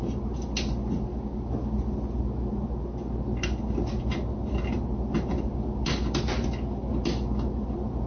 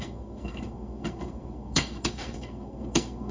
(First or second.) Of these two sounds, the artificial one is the second